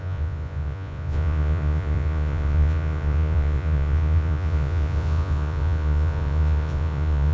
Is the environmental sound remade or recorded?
remade